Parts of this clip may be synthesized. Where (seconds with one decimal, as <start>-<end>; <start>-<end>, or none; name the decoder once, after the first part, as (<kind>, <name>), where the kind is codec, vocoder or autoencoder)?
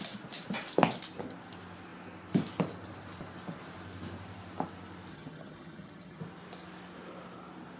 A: 5.1-6.2 (vocoder, HiFi-GAN)